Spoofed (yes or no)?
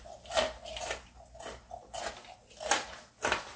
no